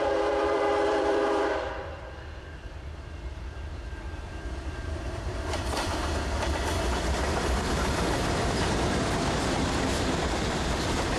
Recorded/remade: remade